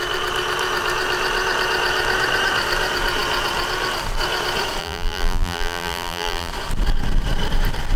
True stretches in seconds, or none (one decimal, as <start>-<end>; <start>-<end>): 0.0-4.8; 6.5-8.0